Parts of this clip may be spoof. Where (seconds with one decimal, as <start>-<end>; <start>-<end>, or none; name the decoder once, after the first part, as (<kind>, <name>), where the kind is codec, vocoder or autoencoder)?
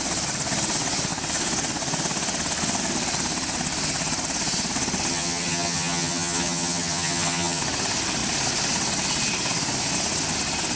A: 5.1-7.6 (vocoder, HiFi-GAN)